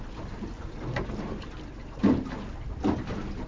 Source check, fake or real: real